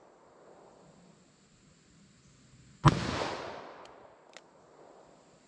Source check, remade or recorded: recorded